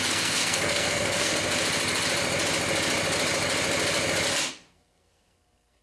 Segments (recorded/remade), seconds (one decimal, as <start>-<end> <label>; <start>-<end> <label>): 0.0-1.3 remade; 1.3-4.5 recorded; 4.5-5.8 remade